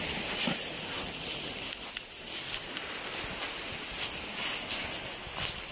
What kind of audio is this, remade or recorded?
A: recorded